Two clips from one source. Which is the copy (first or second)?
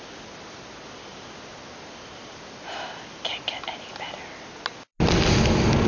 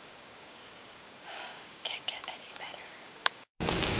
second